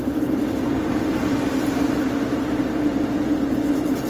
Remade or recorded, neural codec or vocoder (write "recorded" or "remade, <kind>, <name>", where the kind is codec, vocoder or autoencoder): recorded